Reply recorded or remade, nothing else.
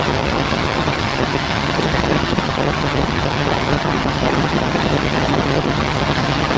remade